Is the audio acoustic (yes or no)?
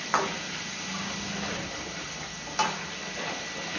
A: yes